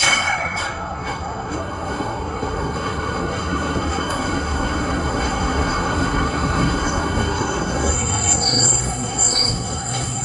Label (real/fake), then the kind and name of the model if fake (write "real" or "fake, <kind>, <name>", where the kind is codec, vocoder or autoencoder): fake, codec, SNAC